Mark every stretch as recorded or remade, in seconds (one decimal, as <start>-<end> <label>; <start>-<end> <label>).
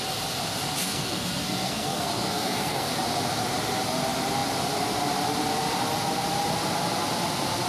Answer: 0.0-0.8 recorded; 0.8-2.9 remade; 2.9-7.7 recorded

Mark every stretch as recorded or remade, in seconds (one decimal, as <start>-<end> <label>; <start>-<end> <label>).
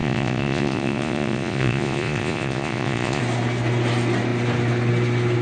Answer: 0.0-3.2 remade; 3.2-5.4 recorded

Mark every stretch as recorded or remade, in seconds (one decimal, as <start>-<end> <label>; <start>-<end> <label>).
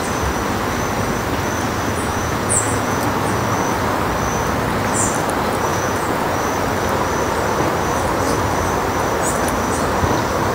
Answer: 0.0-2.1 recorded; 2.1-3.0 remade; 3.0-5.7 recorded; 5.7-6.3 remade; 6.3-10.5 recorded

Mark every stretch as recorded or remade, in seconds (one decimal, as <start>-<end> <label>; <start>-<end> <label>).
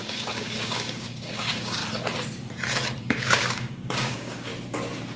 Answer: 0.0-1.8 remade; 1.8-3.0 recorded; 3.0-4.5 remade; 4.5-5.2 recorded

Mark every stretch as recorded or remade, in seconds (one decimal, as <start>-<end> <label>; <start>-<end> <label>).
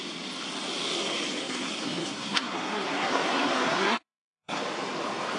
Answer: 0.0-1.4 recorded; 1.4-4.6 remade; 4.6-5.4 recorded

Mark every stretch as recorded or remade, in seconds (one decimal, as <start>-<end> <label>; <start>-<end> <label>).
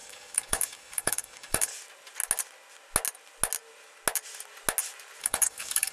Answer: 0.0-1.7 remade; 1.7-5.2 recorded; 5.2-5.9 remade